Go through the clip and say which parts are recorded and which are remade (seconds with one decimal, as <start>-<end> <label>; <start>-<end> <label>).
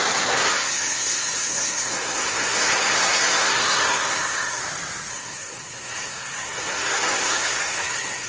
0.0-4.6 remade; 4.6-5.1 recorded; 5.1-8.3 remade